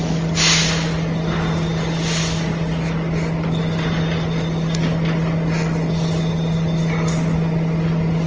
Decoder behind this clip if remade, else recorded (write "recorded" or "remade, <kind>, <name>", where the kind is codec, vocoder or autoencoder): recorded